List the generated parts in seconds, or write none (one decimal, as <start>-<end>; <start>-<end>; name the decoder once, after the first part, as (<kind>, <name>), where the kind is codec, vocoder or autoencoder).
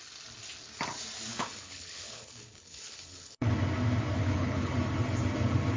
1.3-3.5 (codec, HILCodec); 4.2-4.7